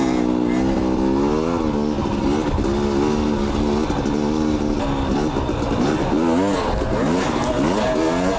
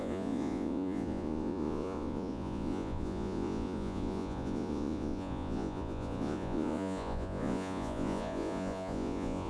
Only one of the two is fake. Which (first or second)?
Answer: second